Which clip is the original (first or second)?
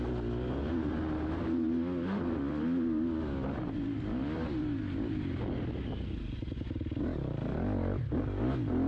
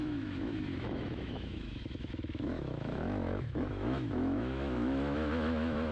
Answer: first